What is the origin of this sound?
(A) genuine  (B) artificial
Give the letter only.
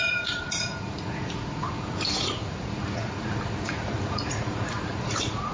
B